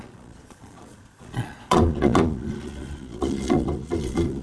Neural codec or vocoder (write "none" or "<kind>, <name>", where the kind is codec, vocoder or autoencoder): vocoder, Vocos